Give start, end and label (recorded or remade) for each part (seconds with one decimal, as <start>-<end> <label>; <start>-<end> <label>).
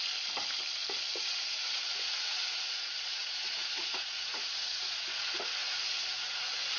0.0-1.2 recorded; 1.2-6.8 remade